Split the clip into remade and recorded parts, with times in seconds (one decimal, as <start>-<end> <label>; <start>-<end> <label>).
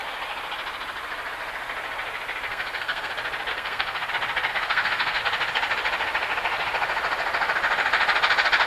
0.0-2.5 recorded; 2.5-3.1 remade; 3.1-3.5 recorded; 3.5-4.1 remade; 4.1-4.5 recorded; 4.5-5.2 remade; 5.2-8.7 recorded